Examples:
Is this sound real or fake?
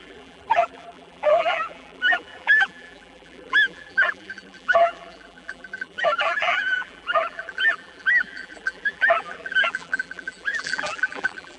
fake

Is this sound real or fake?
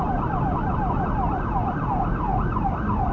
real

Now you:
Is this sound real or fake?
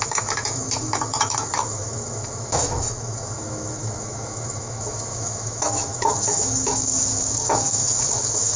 fake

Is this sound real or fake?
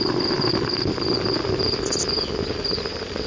real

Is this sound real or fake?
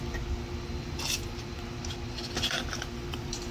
real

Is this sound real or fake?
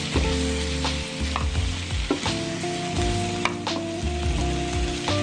real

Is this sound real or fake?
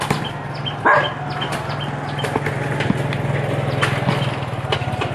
real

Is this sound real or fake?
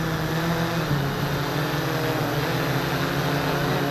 real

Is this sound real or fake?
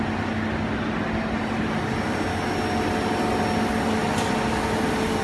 real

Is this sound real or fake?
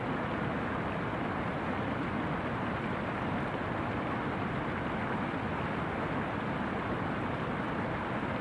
real